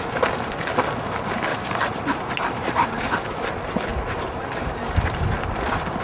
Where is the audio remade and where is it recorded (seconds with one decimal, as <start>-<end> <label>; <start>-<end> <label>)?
0.0-1.5 recorded; 1.5-2.0 remade; 2.0-2.6 recorded; 2.6-3.1 remade; 3.1-3.9 recorded; 3.9-5.4 remade; 5.4-6.0 recorded